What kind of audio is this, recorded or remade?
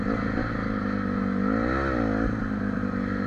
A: recorded